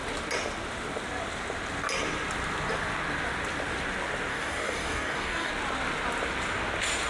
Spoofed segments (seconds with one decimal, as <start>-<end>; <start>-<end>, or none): 4.3-5.5